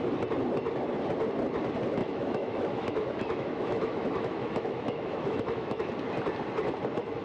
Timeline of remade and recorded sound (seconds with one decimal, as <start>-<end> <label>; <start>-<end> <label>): 0.0-2.0 recorded; 2.0-5.9 remade; 5.9-7.2 recorded